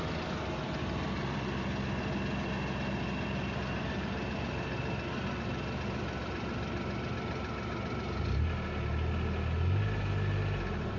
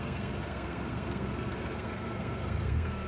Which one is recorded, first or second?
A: first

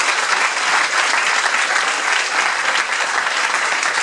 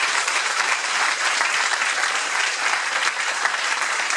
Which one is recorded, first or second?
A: first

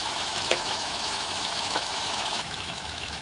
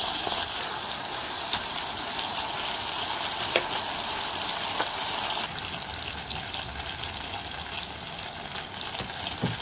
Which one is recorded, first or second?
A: second